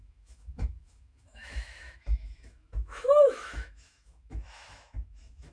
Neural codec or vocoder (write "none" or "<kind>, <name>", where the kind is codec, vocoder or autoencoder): autoencoder, DAC-VAE